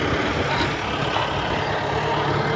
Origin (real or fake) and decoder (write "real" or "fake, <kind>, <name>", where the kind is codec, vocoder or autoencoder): real